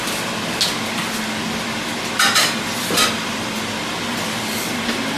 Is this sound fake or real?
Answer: real